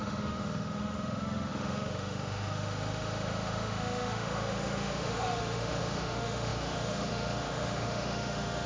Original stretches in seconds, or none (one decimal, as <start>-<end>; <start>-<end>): none